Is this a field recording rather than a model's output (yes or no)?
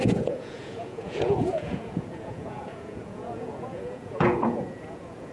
no